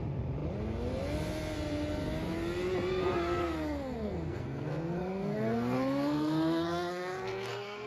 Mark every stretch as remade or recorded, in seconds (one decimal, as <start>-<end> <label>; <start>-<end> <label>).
0.0-2.9 recorded; 2.9-7.9 remade